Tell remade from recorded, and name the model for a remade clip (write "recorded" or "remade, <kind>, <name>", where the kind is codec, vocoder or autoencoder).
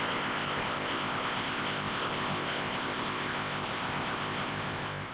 remade, codec, ZipCodec